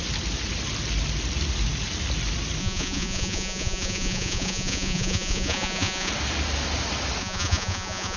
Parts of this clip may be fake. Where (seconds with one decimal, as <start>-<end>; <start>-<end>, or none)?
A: 2.6-6.1; 7.2-8.2